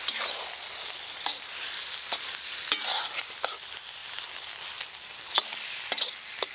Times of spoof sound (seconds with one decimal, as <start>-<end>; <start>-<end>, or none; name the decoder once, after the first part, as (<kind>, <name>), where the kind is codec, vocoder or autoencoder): none